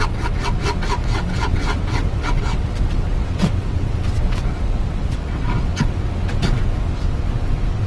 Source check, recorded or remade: remade